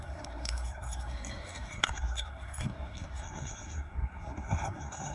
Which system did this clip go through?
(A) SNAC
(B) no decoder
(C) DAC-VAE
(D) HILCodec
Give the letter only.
A